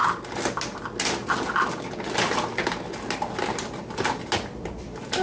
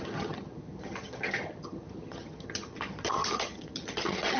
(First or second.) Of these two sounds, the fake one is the second